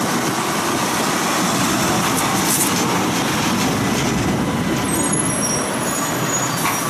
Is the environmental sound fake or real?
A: real